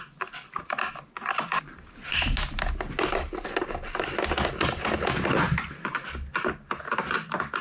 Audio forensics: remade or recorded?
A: recorded